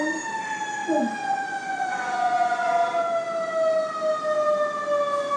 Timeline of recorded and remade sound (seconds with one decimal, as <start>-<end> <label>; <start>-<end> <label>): 0.0-0.8 recorded; 0.8-2.7 remade; 2.7-5.4 recorded